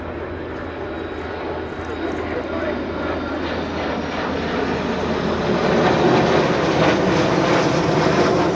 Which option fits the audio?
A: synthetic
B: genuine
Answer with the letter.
B